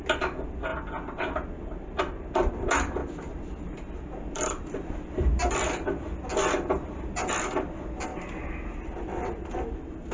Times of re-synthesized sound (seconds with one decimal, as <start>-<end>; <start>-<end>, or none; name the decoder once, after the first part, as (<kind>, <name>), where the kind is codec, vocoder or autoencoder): none